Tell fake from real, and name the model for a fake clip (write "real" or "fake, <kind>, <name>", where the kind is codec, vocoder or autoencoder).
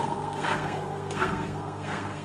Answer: fake, codec, SNAC